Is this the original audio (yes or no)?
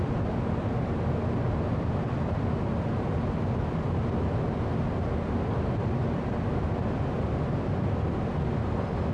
yes